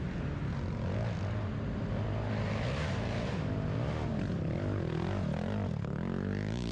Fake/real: real